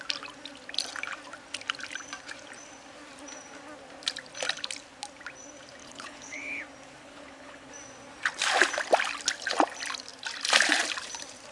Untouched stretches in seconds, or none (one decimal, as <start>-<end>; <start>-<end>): 0.0-5.8; 6.6-7.0; 7.7-11.5